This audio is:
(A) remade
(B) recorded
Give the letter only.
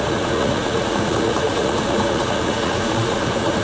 A